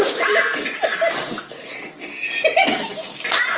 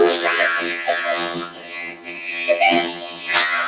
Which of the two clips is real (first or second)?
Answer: first